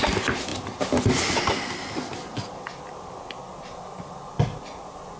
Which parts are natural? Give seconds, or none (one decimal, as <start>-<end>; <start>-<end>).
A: 0.0-5.2